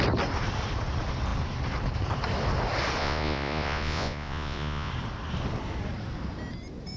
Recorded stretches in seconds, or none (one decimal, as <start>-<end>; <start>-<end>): 0.0-3.0; 4.9-7.0